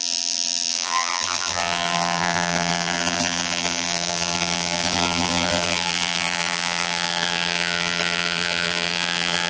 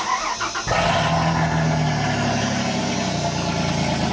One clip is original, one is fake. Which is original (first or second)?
second